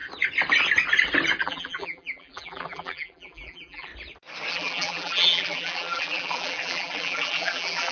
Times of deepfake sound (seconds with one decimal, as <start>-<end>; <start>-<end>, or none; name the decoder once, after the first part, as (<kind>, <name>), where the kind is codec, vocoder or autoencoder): 1.4-3.9 (vocoder, BigVGAN v2); 4.5-7.9